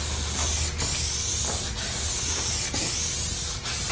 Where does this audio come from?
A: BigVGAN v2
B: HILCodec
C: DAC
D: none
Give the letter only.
D